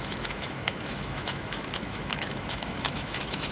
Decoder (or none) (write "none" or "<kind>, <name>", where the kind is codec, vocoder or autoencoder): autoencoder, DAC-VAE